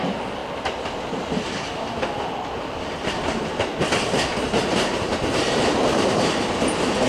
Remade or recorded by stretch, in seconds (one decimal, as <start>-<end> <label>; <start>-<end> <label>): 0.0-4.6 recorded; 4.6-5.7 remade; 5.7-7.1 recorded